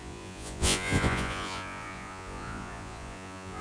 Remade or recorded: remade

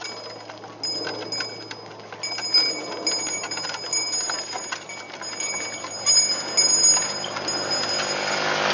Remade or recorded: recorded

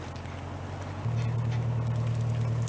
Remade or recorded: recorded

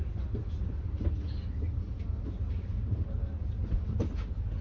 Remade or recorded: recorded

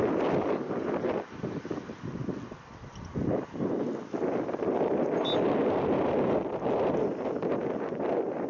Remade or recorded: recorded